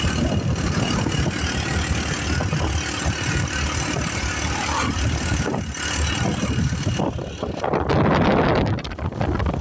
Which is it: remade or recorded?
recorded